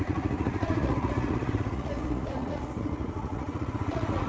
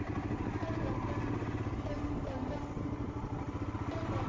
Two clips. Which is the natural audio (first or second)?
second